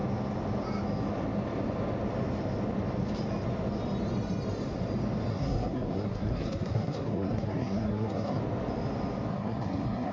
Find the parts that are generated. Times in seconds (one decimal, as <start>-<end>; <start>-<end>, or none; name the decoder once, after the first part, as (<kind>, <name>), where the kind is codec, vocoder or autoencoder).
5.3-8.4 (codec, SNAC); 9.3-10.1